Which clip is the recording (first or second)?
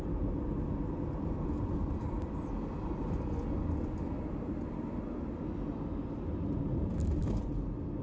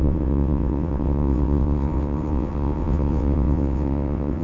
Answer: first